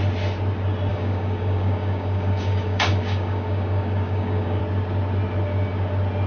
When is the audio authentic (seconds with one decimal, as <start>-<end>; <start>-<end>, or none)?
0.0-0.9; 4.6-6.3